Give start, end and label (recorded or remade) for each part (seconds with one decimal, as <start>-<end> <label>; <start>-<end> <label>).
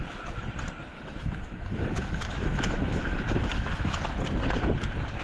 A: 0.0-0.9 recorded; 0.9-4.0 remade; 4.0-5.2 recorded